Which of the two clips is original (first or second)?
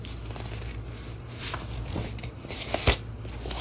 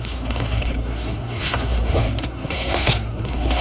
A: first